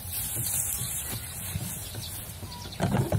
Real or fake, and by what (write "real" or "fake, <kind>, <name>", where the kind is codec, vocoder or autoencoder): fake, vocoder, BigVGAN v2